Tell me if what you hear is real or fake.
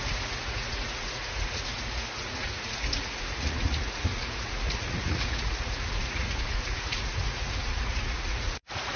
fake